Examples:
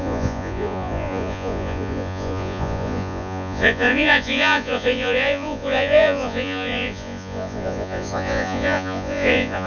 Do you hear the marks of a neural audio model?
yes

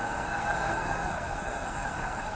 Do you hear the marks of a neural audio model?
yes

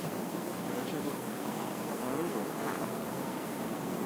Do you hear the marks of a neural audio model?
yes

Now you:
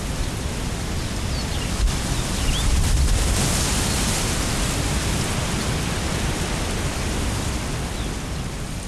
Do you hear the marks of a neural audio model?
no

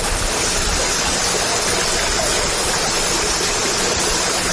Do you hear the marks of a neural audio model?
no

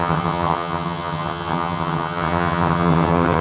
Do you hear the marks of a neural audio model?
yes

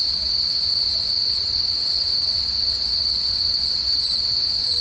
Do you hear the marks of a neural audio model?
yes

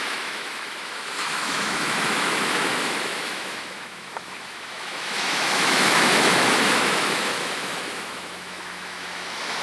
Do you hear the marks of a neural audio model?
yes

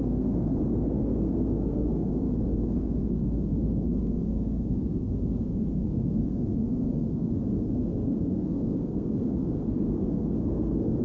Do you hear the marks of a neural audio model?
yes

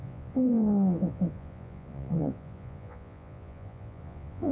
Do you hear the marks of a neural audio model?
yes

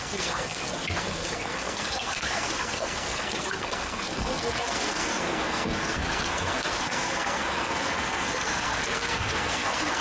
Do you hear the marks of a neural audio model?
yes